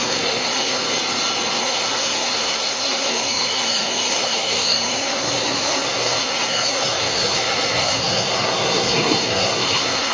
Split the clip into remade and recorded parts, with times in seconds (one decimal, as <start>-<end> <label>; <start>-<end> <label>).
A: 0.0-0.8 remade; 0.8-1.6 recorded; 1.6-10.1 remade

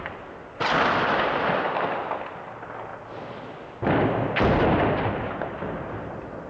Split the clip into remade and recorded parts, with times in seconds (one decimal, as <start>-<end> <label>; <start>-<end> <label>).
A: 0.0-6.5 recorded

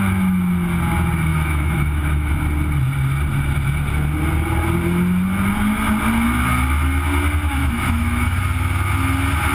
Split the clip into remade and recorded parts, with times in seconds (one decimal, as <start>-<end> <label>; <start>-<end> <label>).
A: 0.0-1.3 recorded; 1.3-2.3 remade; 2.3-7.6 recorded; 7.6-8.4 remade; 8.4-9.5 recorded

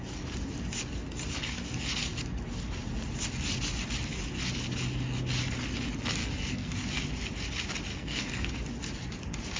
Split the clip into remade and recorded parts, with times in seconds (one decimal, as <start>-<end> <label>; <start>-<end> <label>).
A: 0.0-6.2 recorded; 6.2-6.7 remade; 6.7-7.9 recorded; 7.9-8.5 remade; 8.5-9.6 recorded

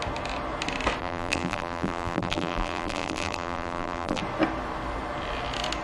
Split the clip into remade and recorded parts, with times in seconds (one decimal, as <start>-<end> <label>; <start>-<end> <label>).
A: 0.0-1.0 recorded; 1.0-4.2 remade; 4.2-5.8 recorded

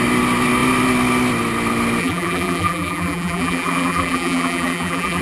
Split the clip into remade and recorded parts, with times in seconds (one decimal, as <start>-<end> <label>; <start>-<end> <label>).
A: 0.0-2.0 recorded; 2.0-5.2 remade

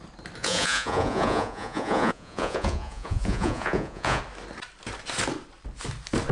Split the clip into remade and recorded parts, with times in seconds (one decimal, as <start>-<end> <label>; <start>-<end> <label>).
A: 0.0-0.4 recorded; 0.4-4.2 remade; 4.2-6.3 recorded

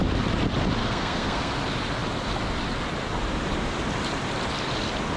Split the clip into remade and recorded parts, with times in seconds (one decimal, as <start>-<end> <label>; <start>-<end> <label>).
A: 0.0-0.8 recorded; 0.8-1.5 remade; 1.5-5.2 recorded